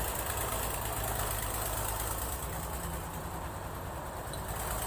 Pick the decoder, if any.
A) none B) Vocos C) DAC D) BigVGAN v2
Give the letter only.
D